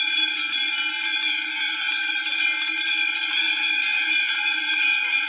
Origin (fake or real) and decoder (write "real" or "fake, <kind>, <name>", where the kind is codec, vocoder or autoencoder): real